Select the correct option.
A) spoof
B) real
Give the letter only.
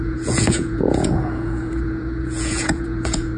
A